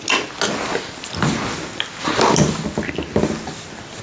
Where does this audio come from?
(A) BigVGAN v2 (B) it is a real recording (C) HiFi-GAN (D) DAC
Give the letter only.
B